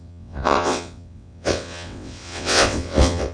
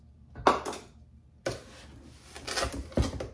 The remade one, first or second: first